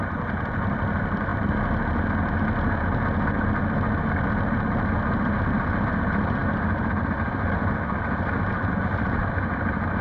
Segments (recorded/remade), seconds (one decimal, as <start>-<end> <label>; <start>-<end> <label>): 0.0-10.0 recorded